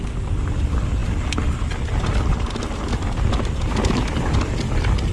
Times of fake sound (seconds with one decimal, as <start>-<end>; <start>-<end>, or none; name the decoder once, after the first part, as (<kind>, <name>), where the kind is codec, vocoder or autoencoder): none

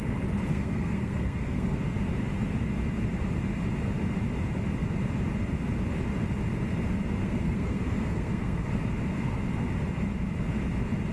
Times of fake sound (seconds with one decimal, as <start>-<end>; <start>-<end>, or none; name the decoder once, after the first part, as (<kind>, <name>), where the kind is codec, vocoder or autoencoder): 0.5-1.8 (codec, SNAC); 7.2-8.7

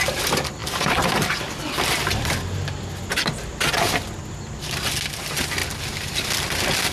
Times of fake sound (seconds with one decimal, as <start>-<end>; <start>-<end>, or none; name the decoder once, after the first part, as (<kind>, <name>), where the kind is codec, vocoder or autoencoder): none

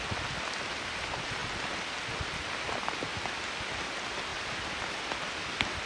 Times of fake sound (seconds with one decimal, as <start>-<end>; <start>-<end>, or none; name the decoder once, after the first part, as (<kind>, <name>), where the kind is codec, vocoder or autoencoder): none